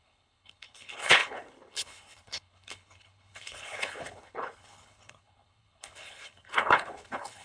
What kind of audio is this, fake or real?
fake